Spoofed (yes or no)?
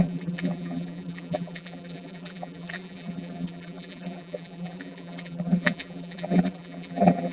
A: yes